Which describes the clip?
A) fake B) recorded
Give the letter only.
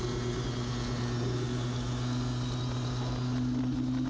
B